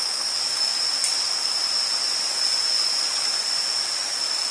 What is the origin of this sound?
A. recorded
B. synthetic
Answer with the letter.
A